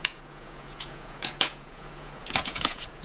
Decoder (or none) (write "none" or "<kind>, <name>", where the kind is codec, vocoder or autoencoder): vocoder, Vocos